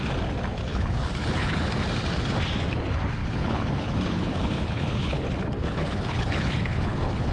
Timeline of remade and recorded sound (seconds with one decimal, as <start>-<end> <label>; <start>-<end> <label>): 0.0-0.7 recorded; 0.7-1.7 remade; 1.7-3.2 recorded; 3.2-7.3 remade

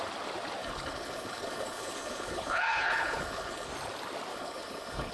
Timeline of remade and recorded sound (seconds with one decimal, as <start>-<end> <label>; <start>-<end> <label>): 0.0-0.6 recorded; 0.6-3.7 remade; 3.7-4.3 recorded; 4.3-5.1 remade

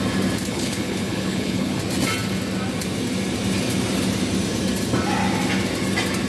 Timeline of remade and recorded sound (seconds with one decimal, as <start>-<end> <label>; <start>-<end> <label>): 0.0-0.5 recorded; 0.5-1.8 remade; 1.8-6.3 recorded

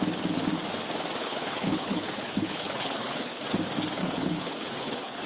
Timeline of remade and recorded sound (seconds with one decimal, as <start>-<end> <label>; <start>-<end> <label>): 0.0-1.2 recorded; 1.2-3.4 remade; 3.4-4.0 recorded; 4.0-5.3 remade